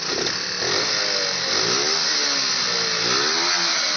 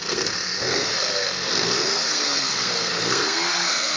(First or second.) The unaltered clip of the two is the first